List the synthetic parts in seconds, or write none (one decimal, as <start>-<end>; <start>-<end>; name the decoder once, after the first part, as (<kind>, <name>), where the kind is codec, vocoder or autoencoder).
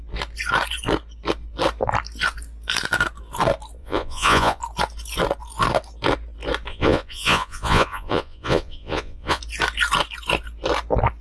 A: 3.8-4.6 (vocoder, Vocos); 6.7-9.4